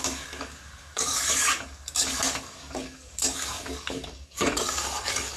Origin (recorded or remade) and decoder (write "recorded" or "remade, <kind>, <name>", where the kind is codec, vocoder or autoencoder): remade, codec, DAC